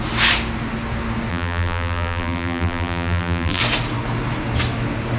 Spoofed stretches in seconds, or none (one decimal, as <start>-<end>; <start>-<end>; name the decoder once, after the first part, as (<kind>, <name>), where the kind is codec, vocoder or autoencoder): 1.3-3.6 (vocoder, BigVGAN v2)